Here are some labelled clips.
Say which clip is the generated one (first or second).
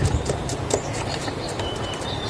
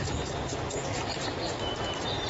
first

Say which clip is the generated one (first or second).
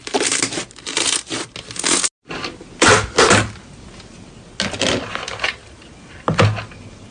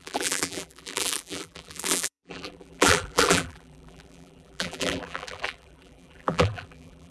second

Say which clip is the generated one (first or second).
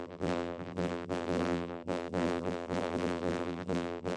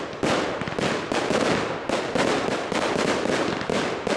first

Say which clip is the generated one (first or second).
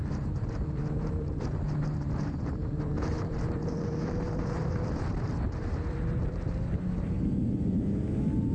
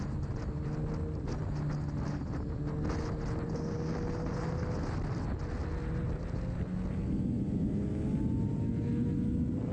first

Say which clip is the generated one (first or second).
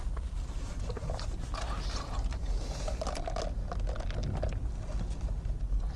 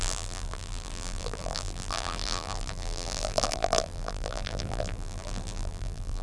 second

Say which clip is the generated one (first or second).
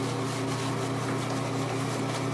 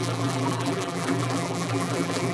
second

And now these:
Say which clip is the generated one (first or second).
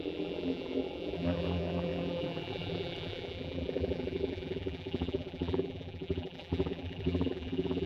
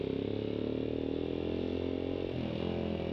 first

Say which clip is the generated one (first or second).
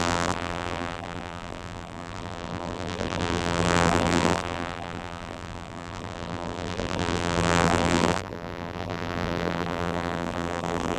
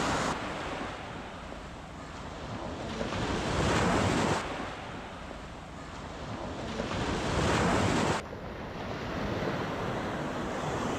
first